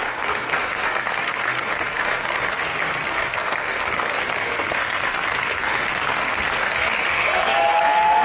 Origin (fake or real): fake